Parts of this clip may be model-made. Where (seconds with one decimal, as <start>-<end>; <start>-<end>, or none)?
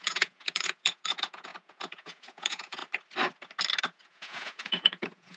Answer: 0.0-2.8; 3.8-5.4